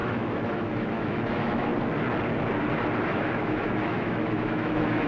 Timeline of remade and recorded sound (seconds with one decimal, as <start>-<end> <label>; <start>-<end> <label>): 0.0-1.7 remade; 1.7-3.0 recorded; 3.0-5.1 remade